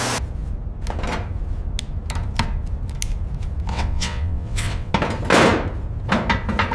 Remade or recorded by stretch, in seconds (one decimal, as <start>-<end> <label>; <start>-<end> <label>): 0.0-3.7 recorded; 3.7-4.9 remade; 4.9-6.7 recorded